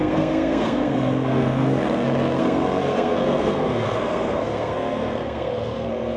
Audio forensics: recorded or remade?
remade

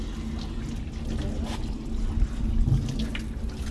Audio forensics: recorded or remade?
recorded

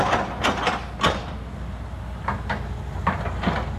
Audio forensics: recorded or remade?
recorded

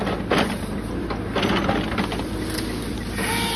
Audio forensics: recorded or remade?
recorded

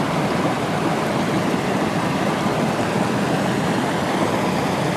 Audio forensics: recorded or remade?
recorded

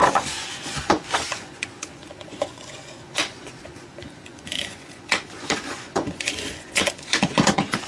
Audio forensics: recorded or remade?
remade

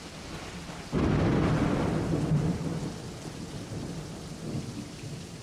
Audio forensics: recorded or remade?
recorded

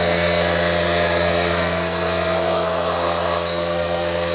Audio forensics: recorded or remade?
remade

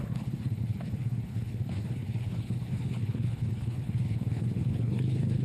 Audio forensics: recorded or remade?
remade